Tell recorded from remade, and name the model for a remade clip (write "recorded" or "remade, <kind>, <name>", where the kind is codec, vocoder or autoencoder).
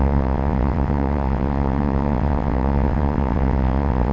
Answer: remade, vocoder, WaveNeXt